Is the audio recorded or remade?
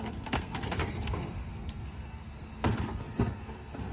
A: remade